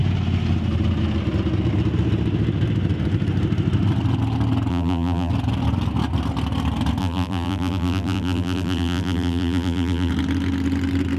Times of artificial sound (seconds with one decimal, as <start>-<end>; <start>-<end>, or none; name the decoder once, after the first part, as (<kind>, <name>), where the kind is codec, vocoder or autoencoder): 4.7-5.3 (vocoder, BigVGAN v2); 7.0-10.1